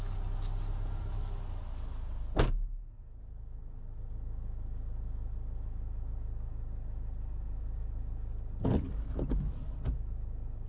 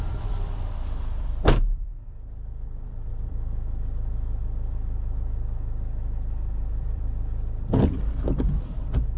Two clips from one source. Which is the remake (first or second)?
second